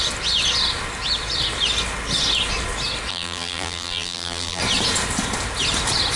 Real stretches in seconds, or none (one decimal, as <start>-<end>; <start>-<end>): 0.0-3.1; 4.6-6.2